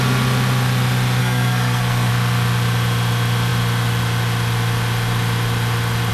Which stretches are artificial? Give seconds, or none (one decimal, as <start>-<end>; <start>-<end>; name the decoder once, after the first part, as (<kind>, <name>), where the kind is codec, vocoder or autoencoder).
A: 1.2-2.1 (codec, SNAC)